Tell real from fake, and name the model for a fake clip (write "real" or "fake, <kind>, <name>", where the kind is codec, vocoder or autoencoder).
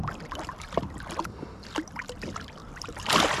real